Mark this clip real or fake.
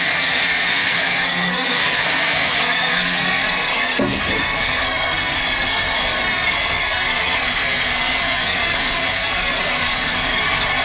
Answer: fake